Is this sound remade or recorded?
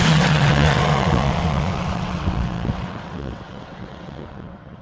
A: remade